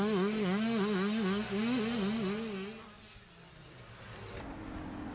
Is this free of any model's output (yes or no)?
yes